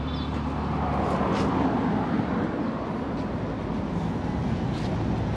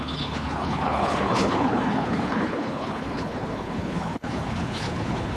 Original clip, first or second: first